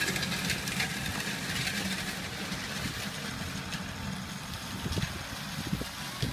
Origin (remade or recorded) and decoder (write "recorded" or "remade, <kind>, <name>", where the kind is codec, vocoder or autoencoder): recorded